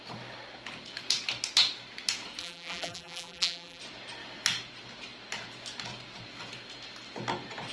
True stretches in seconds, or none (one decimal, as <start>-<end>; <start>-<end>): 0.0-2.4; 3.8-7.7